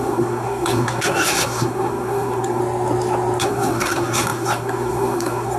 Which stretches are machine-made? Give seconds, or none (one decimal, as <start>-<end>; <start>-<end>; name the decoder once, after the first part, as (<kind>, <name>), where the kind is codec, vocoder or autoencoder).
0.0-2.6 (codec, SNAC); 3.4-5.6